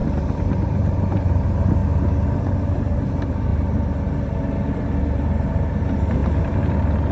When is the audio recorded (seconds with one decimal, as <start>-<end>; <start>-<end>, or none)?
0.0-0.6; 1.8-2.7; 3.5-5.0; 6.2-7.1